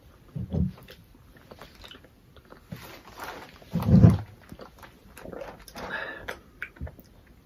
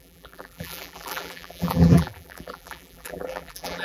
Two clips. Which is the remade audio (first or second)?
second